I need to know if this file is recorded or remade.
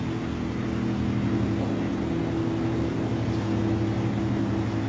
recorded